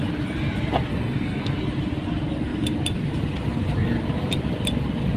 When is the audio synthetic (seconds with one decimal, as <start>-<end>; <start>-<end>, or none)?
0.9-1.5